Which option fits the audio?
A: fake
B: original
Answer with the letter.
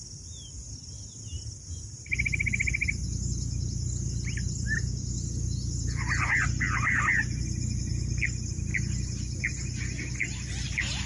B